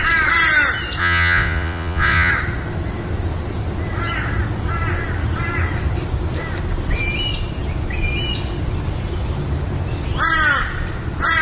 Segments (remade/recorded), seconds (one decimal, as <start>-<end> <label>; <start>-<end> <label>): 0.0-1.0 recorded; 1.0-2.3 remade; 2.3-11.4 recorded